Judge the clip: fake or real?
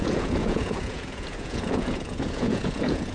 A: fake